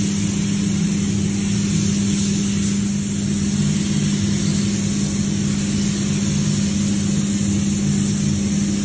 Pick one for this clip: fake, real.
real